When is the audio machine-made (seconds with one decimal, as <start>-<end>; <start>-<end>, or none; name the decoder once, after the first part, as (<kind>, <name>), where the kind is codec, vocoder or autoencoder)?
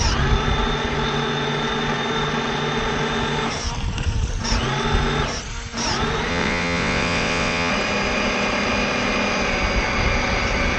6.3-7.7 (vocoder, WaveNeXt)